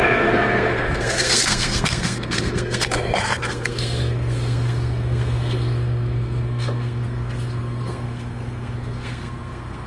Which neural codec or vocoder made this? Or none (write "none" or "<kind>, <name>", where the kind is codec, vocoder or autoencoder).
codec, SNAC